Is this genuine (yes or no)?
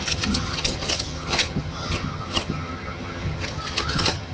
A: no